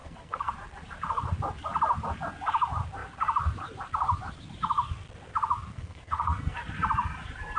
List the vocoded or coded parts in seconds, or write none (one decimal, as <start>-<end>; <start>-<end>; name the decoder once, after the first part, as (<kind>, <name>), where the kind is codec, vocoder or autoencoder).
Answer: 0.0-0.5 (codec, SNAC); 5.7-6.6